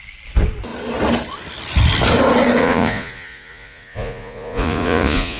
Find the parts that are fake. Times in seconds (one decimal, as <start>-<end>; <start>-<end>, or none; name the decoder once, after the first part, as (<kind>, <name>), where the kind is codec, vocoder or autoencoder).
2.6-5.4 (vocoder, Vocos)